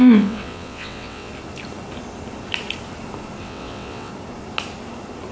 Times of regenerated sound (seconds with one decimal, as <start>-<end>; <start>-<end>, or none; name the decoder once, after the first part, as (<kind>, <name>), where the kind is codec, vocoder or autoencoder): 0.0-1.3 (vocoder, WaveNeXt); 3.4-4.1